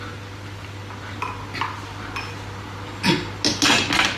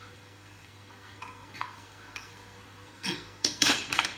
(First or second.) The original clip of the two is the first